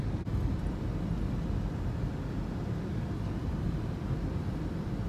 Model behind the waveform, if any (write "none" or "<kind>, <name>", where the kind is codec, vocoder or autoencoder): none